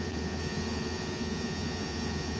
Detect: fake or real fake